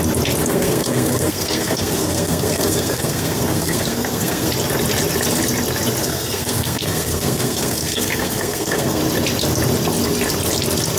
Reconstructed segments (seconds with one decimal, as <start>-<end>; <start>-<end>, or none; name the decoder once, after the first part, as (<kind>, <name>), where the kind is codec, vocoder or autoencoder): 0.4-4.5 (codec, SNAC); 6.0-9.0

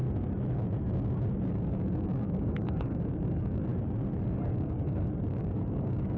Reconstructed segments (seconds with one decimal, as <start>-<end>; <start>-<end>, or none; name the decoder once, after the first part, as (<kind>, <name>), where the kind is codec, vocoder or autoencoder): 1.5-3.7 (codec, DAC); 4.2-6.2

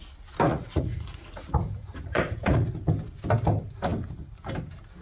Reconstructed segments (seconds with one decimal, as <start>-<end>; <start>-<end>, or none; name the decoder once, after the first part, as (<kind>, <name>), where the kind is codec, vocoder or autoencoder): 0.5-2.7 (vocoder, Vocos)

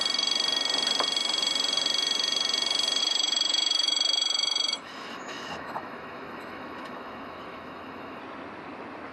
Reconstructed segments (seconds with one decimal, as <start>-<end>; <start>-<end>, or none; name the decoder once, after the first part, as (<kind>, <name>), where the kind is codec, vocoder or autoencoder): 3.0-8.2 (autoencoder, DAC-VAE)

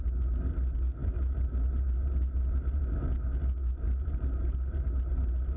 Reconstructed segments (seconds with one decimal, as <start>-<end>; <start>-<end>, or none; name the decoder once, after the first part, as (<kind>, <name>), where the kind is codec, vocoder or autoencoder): none

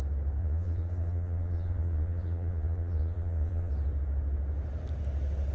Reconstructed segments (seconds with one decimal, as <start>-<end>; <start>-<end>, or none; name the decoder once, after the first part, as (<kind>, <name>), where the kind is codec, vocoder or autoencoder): 0.4-3.7 (vocoder, Vocos)